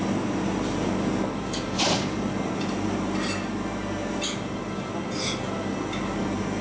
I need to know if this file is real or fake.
real